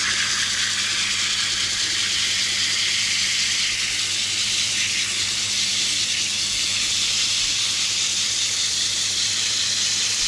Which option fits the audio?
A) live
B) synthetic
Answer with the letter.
B